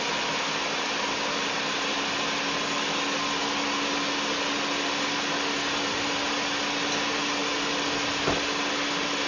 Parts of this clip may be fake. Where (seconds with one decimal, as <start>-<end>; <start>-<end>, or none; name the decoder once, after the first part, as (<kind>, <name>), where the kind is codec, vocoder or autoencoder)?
none